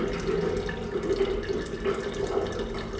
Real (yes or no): yes